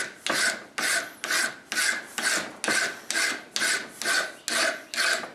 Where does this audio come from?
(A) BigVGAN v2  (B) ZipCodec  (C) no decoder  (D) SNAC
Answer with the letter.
C